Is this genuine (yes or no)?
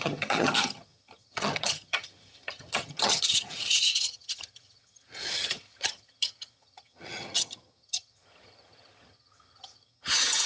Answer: no